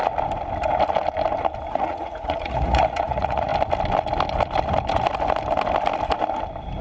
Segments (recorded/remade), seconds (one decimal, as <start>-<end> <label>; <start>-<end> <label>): 0.0-1.7 recorded; 1.7-3.5 remade; 3.5-6.8 recorded